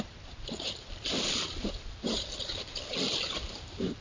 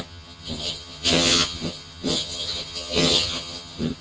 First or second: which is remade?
second